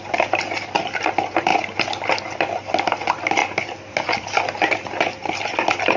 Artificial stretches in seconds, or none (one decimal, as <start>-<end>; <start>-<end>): 0.0-1.5; 2.4-3.4; 5.6-6.0